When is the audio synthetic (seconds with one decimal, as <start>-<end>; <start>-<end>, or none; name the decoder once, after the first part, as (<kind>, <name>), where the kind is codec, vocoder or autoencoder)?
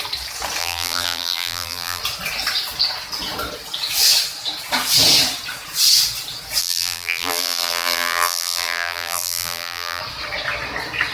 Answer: 0.6-2.0 (vocoder, BigVGAN v2); 6.6-10.0